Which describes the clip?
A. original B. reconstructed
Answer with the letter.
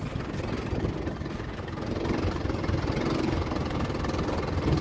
A